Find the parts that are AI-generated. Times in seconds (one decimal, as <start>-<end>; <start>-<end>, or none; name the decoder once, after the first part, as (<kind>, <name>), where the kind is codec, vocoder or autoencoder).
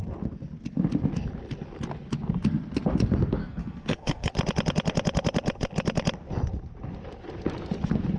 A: 3.4-4.3 (codec, SNAC)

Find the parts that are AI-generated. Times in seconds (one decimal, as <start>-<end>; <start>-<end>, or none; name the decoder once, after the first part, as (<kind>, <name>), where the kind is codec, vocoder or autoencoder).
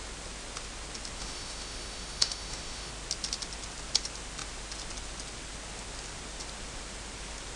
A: 1.2-2.9 (autoencoder, DAC-VAE)